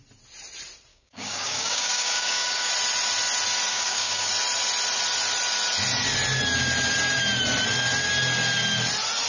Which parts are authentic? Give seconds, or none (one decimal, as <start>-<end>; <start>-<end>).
0.0-0.9; 2.7-3.7; 4.3-9.3